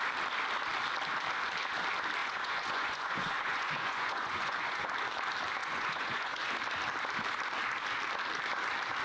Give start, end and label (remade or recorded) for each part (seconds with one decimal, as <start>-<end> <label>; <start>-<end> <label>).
0.0-2.2 recorded; 2.2-4.9 remade; 4.9-5.6 recorded; 5.6-6.5 remade; 6.5-9.0 recorded